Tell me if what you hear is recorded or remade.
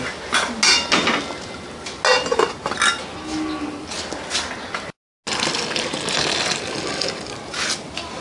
recorded